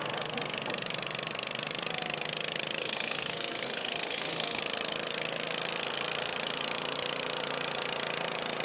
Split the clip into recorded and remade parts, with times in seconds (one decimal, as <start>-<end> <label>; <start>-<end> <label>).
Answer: 0.0-2.8 recorded; 2.8-4.6 remade; 4.6-8.6 recorded

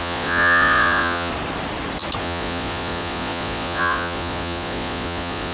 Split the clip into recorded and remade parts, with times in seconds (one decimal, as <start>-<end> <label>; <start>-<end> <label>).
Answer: 0.0-1.3 remade; 1.3-2.2 recorded; 2.2-5.5 remade

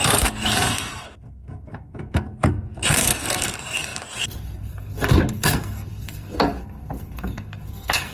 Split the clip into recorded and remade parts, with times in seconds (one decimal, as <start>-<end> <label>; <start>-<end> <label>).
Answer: 0.0-8.1 remade

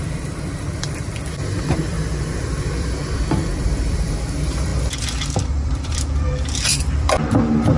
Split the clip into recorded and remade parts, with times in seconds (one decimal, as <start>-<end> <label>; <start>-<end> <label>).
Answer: 0.0-7.8 remade

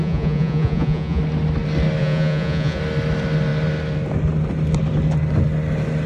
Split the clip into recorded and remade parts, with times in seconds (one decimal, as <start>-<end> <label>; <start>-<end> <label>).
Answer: 0.0-1.2 remade; 1.2-2.0 recorded; 2.0-2.8 remade; 2.8-6.1 recorded